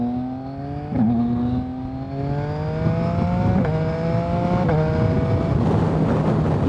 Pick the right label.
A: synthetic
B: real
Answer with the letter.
B